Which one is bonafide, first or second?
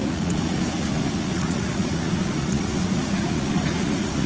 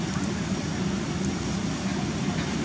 second